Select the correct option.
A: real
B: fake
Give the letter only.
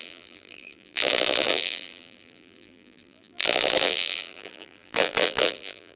B